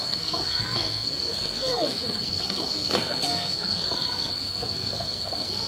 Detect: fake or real fake